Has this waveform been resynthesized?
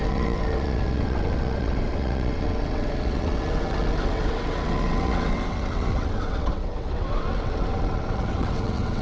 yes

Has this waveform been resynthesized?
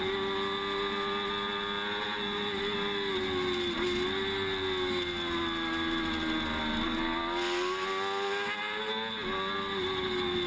no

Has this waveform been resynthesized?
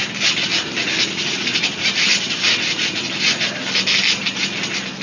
no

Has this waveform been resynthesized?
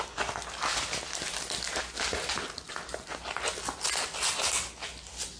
no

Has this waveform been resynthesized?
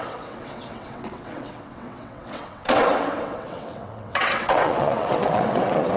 yes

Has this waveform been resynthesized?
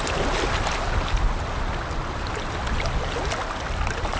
no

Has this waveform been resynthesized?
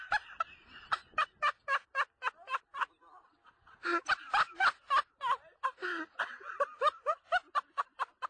no